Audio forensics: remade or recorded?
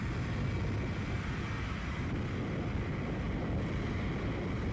recorded